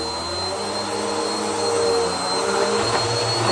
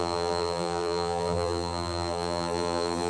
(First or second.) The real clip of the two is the first